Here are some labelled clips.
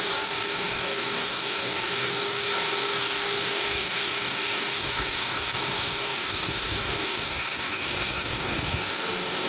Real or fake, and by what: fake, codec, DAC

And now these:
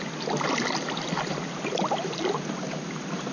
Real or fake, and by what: real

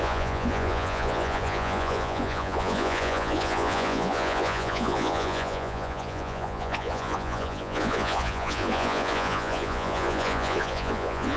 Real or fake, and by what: fake, vocoder, Vocos